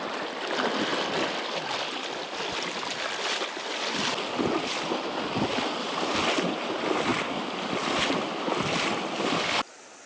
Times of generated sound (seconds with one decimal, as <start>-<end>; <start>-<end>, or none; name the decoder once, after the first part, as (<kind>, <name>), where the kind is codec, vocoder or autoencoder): none